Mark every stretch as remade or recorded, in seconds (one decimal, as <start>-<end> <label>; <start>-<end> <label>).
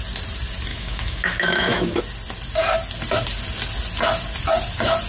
0.0-0.7 recorded; 0.7-2.0 remade; 2.0-5.1 recorded